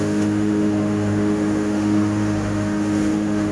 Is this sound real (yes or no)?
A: no